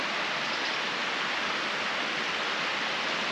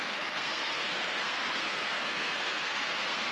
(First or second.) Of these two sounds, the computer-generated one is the second